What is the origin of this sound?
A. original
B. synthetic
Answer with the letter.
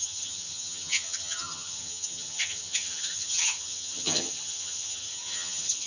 B